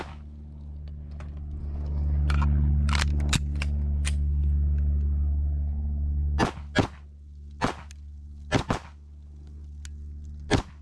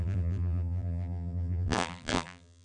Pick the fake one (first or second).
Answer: second